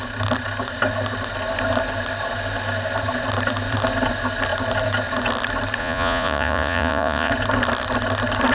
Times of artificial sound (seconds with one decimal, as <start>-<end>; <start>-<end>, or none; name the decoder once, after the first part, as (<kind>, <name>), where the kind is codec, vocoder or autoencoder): 5.8-7.3 (vocoder, Vocos)